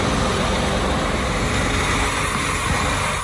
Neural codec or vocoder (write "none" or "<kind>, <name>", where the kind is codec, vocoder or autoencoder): none